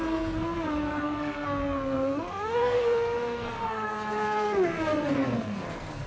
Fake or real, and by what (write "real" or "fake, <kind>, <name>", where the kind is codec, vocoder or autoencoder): fake, codec, SNAC